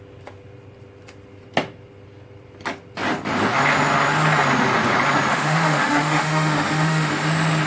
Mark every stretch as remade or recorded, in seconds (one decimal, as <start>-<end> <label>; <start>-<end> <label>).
0.0-5.3 recorded; 5.3-7.1 remade; 7.1-7.7 recorded